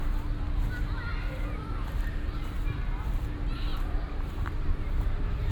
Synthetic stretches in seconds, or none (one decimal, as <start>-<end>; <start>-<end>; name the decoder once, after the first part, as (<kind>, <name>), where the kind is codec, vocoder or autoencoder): 3.7-5.1 (vocoder, BigVGAN v2)